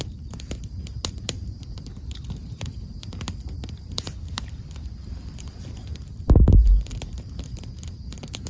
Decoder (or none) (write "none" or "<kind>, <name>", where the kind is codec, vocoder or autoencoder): vocoder, BigVGAN v2